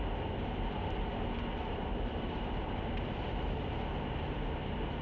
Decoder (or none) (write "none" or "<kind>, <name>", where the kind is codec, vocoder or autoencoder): none